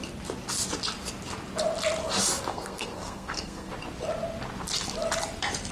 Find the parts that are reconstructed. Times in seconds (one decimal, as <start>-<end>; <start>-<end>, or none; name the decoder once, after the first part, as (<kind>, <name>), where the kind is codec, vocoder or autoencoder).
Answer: 2.5-3.7 (codec, SNAC)